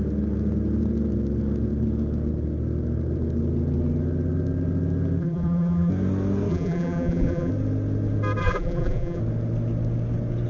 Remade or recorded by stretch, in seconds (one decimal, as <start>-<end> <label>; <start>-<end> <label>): 0.0-5.2 recorded; 5.2-5.9 remade; 5.9-6.5 recorded; 6.5-7.5 remade; 7.5-8.4 recorded; 8.4-9.2 remade; 9.2-10.5 recorded